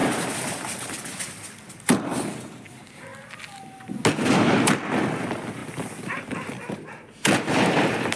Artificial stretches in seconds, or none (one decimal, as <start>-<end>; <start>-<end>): none